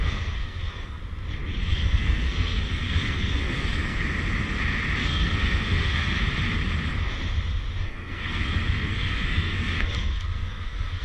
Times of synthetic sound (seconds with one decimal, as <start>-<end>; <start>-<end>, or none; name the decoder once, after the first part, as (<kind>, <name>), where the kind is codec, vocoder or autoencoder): 0.0-1.0 (codec, SNAC); 1.6-4.0; 5.0-6.2; 7.8-11.0